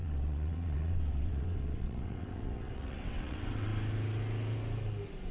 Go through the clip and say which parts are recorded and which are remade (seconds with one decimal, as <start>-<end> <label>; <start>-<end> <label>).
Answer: 0.0-3.7 remade; 3.7-5.3 recorded